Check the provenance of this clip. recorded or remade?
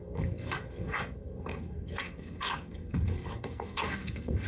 remade